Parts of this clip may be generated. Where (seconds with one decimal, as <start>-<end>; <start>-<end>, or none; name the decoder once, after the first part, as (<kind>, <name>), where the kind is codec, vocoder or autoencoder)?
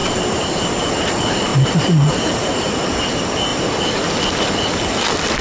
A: 1.5-3.1 (vocoder, BigVGAN v2)